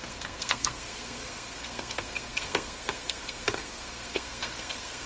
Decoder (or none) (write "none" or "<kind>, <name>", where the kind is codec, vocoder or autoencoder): codec, SNAC